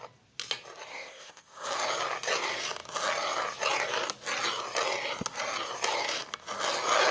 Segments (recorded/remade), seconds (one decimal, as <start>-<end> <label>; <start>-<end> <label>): 0.0-0.9 recorded; 0.9-1.7 remade; 1.7-7.1 recorded

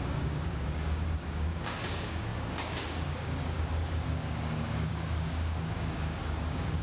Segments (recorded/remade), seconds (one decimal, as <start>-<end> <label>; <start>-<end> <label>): 0.0-6.8 remade

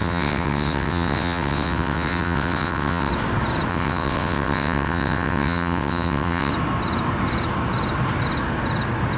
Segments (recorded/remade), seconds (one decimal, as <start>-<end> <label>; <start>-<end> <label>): 0.0-3.1 remade; 3.1-3.7 recorded; 3.7-6.5 remade; 6.5-9.2 recorded

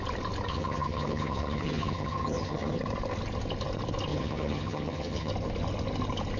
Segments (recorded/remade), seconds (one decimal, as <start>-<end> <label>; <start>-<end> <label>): 0.0-0.5 recorded; 0.5-2.8 remade; 2.8-4.1 recorded; 4.1-5.3 remade; 5.3-6.4 recorded